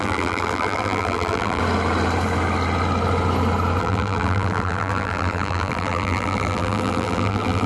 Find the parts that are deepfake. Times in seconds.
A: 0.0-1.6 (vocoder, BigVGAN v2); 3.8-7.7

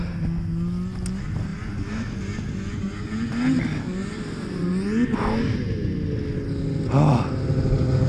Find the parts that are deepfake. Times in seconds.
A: 4.0-4.7 (vocoder, BigVGAN v2)

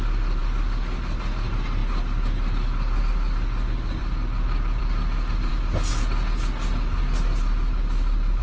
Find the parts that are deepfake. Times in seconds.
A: none

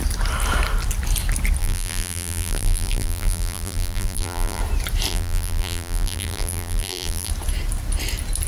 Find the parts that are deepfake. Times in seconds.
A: 1.6-4.6 (vocoder, BigVGAN v2); 5.1-7.3

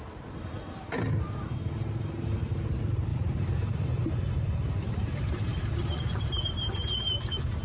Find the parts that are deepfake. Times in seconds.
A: 0.0-5.5 (vocoder, BigVGAN v2); 6.0-7.6

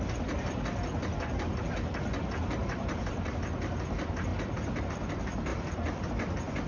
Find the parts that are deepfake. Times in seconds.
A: 2.6-3.3 (vocoder, BigVGAN v2); 5.5-6.1

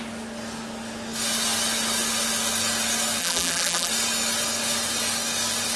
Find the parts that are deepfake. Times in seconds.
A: 3.2-3.9 (vocoder, BigVGAN v2)